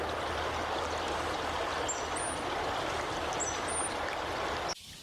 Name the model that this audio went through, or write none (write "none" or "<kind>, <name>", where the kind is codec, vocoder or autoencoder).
none